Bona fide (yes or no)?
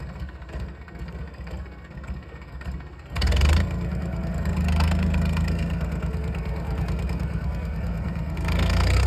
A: no